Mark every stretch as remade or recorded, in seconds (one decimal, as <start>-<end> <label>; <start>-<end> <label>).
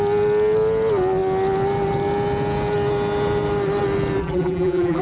0.0-4.2 recorded; 4.2-5.0 remade